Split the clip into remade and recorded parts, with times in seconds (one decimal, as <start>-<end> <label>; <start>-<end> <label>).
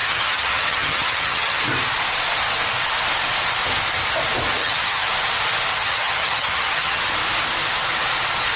0.0-1.6 remade; 1.6-4.6 recorded; 4.6-5.1 remade; 5.1-5.7 recorded; 5.7-7.0 remade; 7.0-8.6 recorded